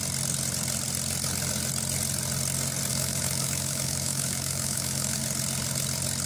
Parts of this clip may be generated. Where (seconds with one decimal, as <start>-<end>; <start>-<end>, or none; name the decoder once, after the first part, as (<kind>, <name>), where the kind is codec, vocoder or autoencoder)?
2.9-5.2 (autoencoder, DAC-VAE)